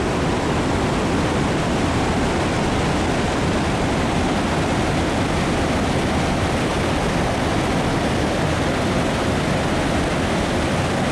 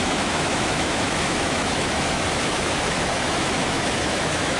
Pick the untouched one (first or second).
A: first